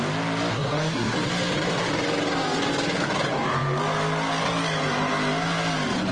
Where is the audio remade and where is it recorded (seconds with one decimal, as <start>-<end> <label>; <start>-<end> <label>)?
0.0-0.5 recorded; 0.5-1.2 remade; 1.2-6.1 recorded